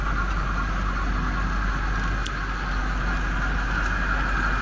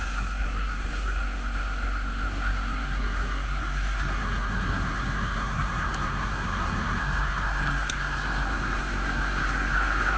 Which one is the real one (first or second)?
first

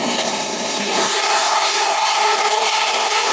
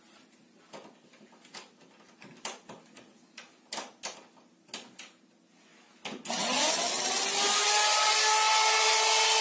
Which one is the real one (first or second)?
second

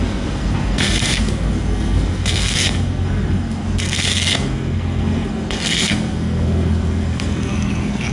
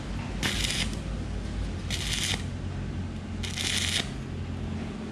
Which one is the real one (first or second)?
second